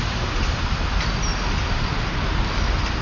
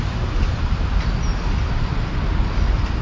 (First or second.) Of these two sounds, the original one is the first